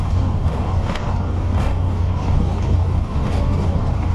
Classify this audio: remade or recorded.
remade